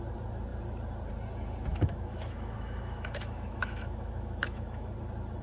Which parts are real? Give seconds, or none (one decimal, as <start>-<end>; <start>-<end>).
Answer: 0.0-1.7; 4.9-5.4